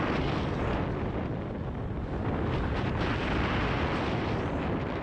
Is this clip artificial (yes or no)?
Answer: no